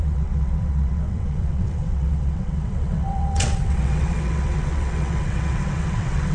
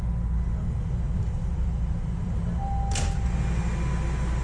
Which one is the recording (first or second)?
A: second